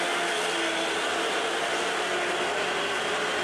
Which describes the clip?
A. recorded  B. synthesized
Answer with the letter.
A